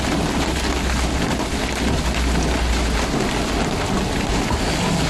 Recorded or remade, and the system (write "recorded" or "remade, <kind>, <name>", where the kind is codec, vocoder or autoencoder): recorded